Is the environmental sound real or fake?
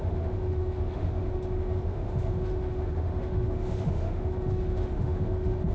fake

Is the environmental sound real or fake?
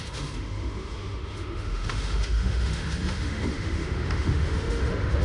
fake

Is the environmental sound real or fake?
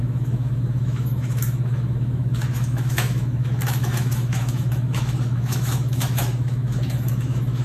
fake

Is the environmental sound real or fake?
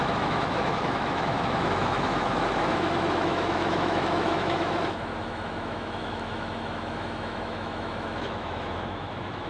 fake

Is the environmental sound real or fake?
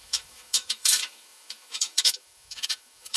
fake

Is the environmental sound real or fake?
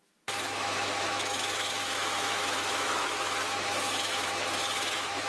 fake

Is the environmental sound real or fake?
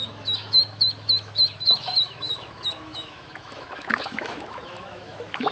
fake